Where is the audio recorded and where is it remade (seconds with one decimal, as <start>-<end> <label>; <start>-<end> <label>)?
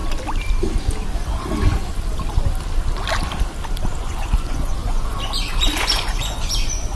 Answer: 0.0-1.1 recorded; 1.1-1.9 remade; 1.9-4.0 recorded; 4.0-7.0 remade